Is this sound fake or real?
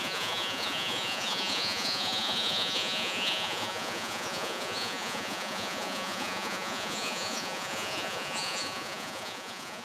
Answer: fake